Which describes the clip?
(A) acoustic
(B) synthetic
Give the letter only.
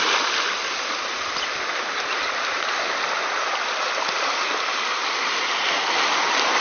A